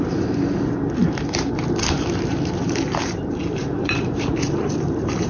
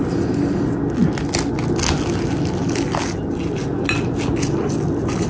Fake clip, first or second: first